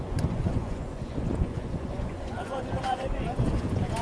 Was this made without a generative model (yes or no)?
no